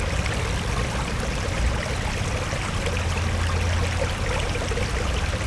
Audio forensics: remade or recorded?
recorded